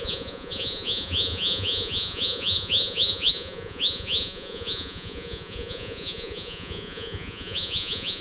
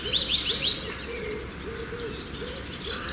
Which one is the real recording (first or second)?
second